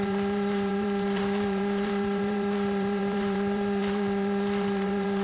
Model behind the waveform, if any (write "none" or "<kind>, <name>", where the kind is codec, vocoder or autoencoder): vocoder, BigVGAN v2